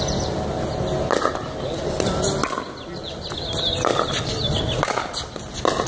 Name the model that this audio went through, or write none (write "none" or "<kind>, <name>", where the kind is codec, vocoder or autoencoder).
none